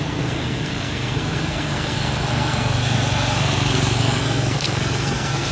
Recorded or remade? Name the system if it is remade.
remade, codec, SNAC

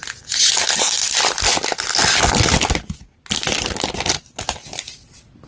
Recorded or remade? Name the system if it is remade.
recorded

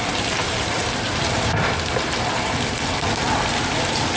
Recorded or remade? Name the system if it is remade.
recorded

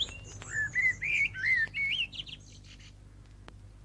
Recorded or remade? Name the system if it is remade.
recorded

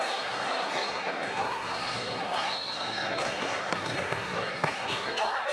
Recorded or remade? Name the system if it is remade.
remade, codec, SNAC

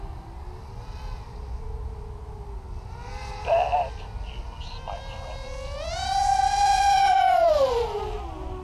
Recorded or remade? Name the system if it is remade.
recorded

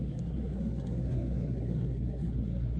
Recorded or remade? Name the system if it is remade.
remade, codec, SNAC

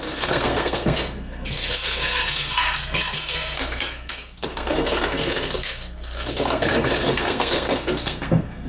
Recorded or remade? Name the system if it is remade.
remade, codec, SNAC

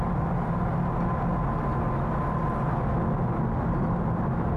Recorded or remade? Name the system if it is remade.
recorded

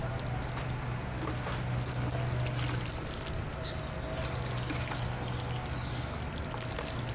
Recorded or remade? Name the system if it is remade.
recorded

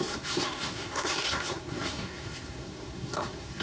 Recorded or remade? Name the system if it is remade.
remade, codec, SNAC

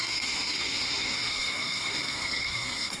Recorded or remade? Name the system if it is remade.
remade, codec, SNAC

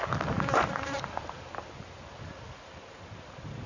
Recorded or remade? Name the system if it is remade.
recorded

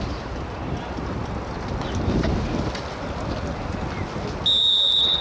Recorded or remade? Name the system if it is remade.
recorded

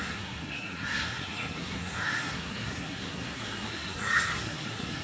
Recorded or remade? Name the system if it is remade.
remade, codec, SNAC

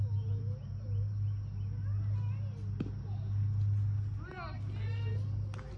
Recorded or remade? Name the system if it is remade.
recorded